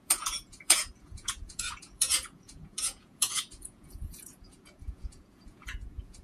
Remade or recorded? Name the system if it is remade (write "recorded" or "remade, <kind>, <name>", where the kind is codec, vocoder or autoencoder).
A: remade, vocoder, Vocos